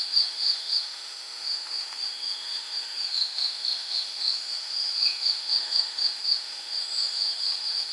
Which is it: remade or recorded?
remade